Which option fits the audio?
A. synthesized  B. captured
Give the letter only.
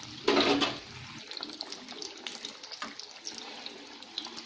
B